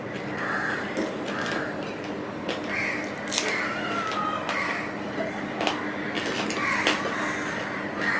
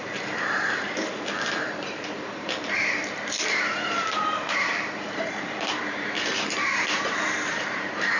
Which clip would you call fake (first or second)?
second